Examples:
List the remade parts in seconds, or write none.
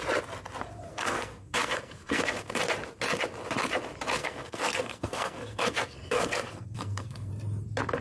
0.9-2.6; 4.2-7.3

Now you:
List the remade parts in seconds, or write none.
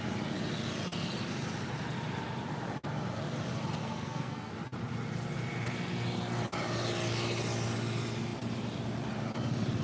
3.8-4.5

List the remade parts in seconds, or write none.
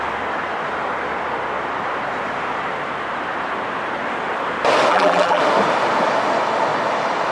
4.9-5.4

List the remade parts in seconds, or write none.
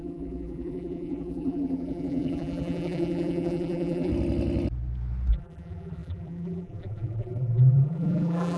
0.0-4.1; 5.3-8.6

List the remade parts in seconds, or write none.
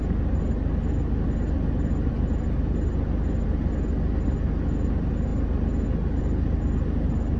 none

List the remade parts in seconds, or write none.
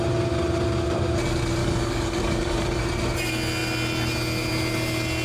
1.6-2.8